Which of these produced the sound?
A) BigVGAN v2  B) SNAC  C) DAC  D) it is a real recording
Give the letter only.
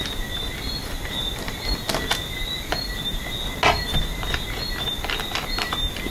D